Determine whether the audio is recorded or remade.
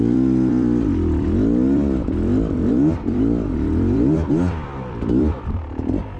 remade